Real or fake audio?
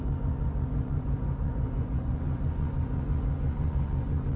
fake